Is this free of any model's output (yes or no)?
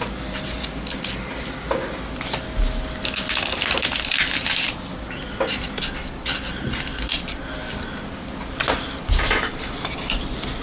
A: yes